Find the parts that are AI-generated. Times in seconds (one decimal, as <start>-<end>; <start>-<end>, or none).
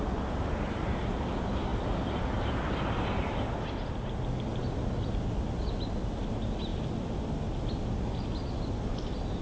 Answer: none